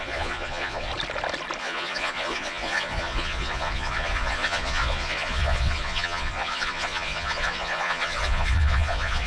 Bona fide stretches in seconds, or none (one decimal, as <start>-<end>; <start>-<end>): 0.9-1.6

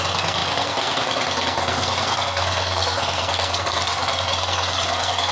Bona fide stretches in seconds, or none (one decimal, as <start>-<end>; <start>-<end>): none

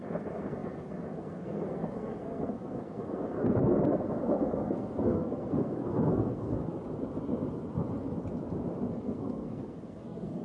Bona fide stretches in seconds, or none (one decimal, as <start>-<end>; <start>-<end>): 6.8-8.9

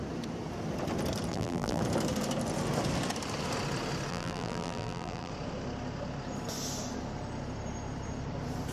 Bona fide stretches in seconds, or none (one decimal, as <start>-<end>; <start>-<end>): 0.0-1.3; 1.8-4.1; 5.3-8.7